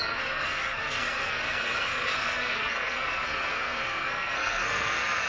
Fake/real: fake